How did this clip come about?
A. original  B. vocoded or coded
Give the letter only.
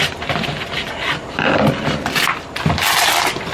A